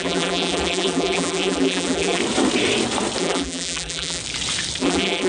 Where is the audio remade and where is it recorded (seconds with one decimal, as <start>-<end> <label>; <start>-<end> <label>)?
0.0-2.2 remade; 2.2-3.2 recorded; 3.2-4.2 remade; 4.2-4.8 recorded; 4.8-5.3 remade